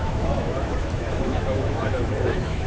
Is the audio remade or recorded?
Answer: remade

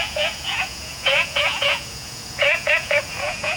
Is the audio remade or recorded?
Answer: remade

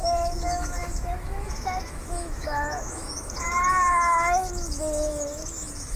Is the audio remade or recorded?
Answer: remade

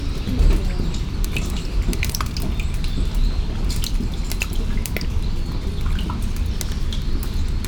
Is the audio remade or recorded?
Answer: recorded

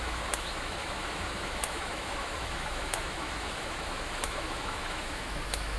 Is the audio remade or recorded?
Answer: remade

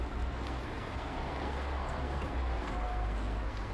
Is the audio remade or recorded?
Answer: remade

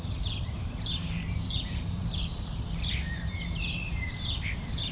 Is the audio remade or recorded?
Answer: remade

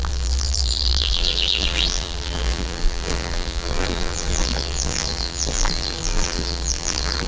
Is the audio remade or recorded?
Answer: remade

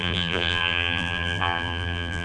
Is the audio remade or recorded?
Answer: remade